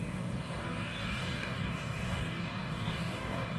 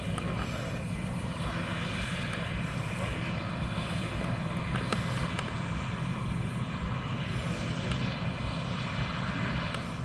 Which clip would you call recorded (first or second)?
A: second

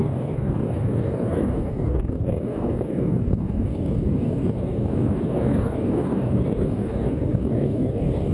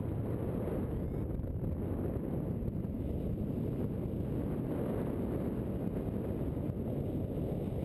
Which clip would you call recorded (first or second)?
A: second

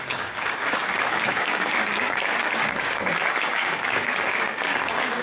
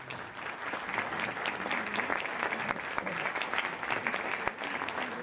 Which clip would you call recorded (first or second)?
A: second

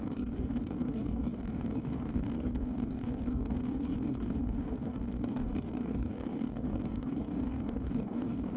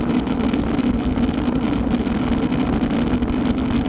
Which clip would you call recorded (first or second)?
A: second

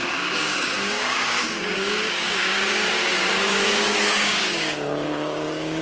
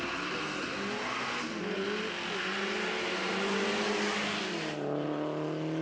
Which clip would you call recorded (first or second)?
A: second